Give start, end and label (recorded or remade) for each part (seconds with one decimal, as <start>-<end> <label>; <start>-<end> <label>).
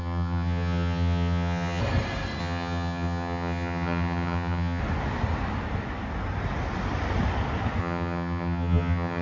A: 0.0-1.8 remade; 1.8-2.4 recorded; 2.4-4.8 remade; 4.8-7.8 recorded; 7.8-9.2 remade